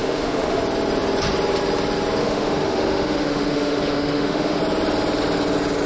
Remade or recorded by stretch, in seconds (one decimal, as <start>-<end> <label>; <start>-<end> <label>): 0.0-0.6 remade; 0.6-2.2 recorded; 2.2-4.6 remade; 4.6-5.9 recorded